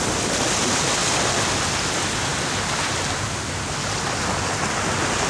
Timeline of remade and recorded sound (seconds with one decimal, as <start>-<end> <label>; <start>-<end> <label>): 0.0-5.3 recorded